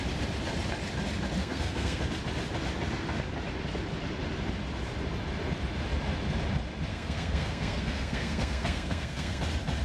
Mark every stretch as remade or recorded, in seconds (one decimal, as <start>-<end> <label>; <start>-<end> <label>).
0.0-1.4 recorded; 1.4-2.0 remade; 2.0-6.9 recorded; 6.9-9.4 remade; 9.4-9.8 recorded